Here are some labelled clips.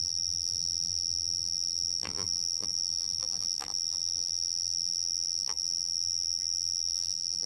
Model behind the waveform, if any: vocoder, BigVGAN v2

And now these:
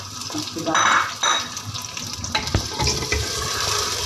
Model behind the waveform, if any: none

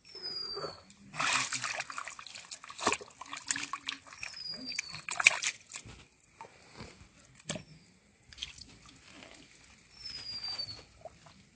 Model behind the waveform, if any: none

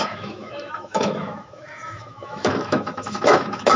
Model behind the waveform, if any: autoencoder, DAC-VAE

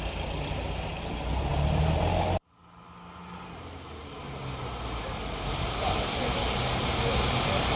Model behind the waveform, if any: none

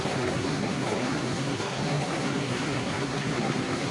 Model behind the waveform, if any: codec, SNAC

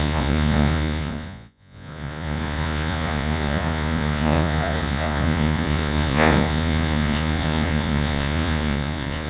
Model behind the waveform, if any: vocoder, Vocos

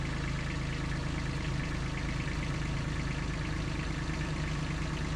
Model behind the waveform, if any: none